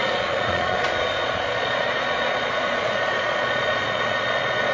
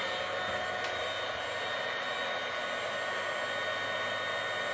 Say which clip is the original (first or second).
second